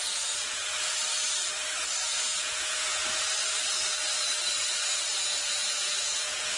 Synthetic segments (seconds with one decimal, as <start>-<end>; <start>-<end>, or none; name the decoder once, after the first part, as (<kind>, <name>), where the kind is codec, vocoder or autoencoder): 0.0-0.6 (vocoder, Vocos); 2.0-3.0; 4.7-6.6